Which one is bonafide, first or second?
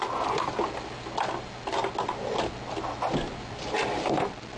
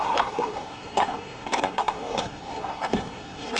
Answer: first